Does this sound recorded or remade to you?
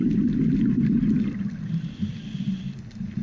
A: recorded